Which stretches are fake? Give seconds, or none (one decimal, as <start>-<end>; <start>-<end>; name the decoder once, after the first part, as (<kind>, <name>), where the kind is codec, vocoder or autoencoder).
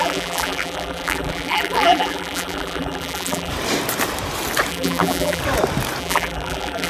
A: 0.0-3.5 (vocoder, BigVGAN v2); 4.7-5.4; 6.0-6.9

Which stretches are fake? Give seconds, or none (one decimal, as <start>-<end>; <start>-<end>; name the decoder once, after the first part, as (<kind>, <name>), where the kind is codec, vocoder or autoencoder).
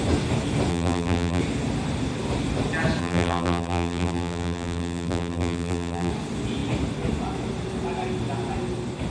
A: 0.7-1.4 (vocoder, BigVGAN v2); 3.0-6.1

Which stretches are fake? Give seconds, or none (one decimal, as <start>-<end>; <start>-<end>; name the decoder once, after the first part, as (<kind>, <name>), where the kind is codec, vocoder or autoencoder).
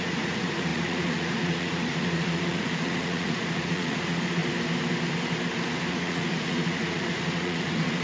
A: 0.0-4.4 (vocoder, Vocos); 5.9-8.0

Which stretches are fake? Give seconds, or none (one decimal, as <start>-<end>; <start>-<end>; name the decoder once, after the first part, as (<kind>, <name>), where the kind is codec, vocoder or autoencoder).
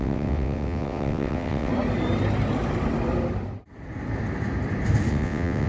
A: 0.0-1.7 (vocoder, WaveNeXt); 5.1-5.7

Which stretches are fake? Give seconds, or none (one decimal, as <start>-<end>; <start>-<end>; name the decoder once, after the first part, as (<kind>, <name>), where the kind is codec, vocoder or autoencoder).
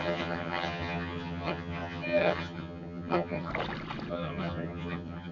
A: 0.0-3.5 (vocoder, HiFi-GAN); 4.1-5.3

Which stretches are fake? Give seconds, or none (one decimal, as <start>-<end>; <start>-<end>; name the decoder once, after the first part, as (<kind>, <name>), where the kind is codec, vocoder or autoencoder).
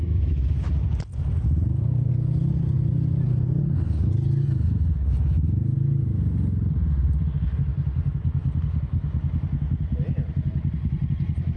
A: 0.0-0.7 (autoencoder, DAC-VAE)